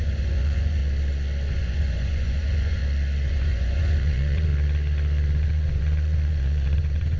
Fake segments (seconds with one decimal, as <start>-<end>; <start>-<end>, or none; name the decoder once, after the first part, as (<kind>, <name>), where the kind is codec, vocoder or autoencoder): 0.0-0.8 (vocoder, Vocos); 1.5-2.8; 3.3-4.5; 5.4-7.2